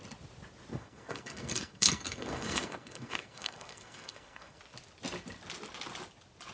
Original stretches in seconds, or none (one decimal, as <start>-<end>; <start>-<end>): 0.0-0.7; 4.6-6.5